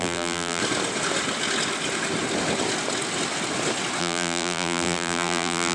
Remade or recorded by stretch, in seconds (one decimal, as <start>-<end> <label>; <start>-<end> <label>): 0.0-0.6 remade; 0.6-4.0 recorded; 4.0-5.7 remade